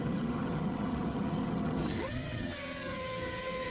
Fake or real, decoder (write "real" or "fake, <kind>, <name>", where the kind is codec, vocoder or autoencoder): fake, vocoder, HiFi-GAN